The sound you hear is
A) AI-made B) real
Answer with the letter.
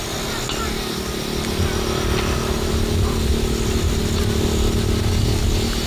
B